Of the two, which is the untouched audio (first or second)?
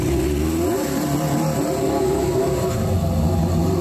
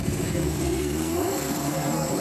first